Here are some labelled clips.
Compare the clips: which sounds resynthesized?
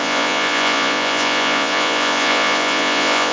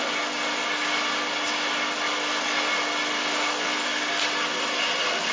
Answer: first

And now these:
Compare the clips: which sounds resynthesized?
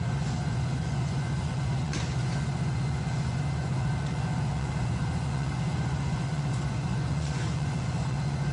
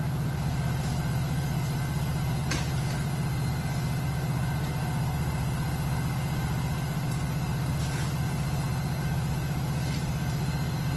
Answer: first